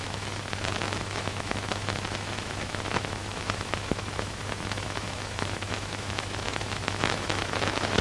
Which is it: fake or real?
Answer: fake